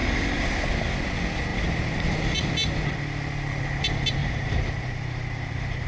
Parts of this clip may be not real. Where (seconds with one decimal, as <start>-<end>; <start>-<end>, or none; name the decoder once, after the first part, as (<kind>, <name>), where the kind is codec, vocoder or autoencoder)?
0.0-0.7 (vocoder, BigVGAN v2); 1.5-2.9; 4.2-5.9